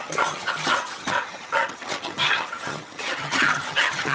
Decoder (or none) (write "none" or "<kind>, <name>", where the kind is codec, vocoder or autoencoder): vocoder, HiFi-GAN